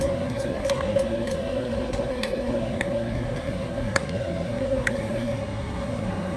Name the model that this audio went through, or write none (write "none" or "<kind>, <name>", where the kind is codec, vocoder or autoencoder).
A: codec, SNAC